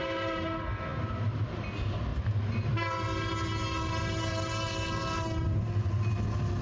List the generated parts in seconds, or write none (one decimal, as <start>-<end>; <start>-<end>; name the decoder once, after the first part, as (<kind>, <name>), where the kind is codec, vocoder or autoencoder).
2.1-6.1 (vocoder, BigVGAN v2)

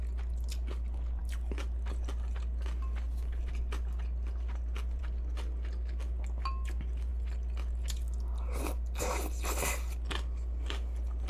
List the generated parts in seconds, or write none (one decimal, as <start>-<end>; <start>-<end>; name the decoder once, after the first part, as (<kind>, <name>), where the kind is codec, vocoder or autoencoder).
none